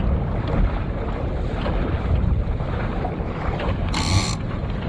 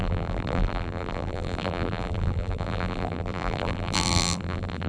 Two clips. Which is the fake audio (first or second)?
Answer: second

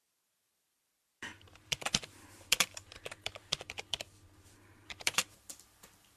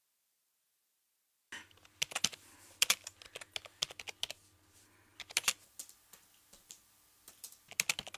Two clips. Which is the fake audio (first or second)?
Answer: first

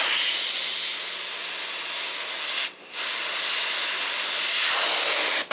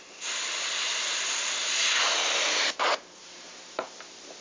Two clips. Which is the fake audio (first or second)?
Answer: second